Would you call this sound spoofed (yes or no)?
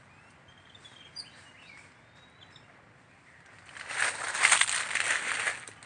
no